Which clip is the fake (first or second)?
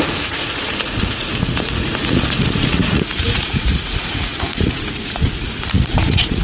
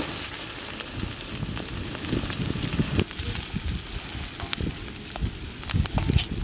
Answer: first